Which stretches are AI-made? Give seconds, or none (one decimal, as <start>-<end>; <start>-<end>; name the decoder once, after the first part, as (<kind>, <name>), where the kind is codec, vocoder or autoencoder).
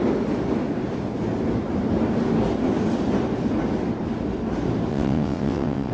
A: 4.9-5.9 (vocoder, WaveNeXt)